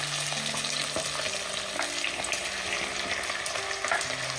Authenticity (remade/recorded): recorded